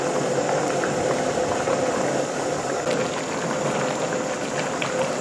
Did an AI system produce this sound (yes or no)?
no